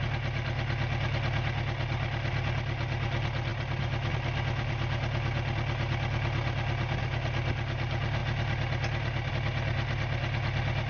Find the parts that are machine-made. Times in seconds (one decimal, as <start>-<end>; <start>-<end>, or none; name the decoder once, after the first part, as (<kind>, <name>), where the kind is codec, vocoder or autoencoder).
3.5-4.1 (vocoder, BigVGAN v2); 8.2-9.3